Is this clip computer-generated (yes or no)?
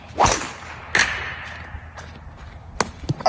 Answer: no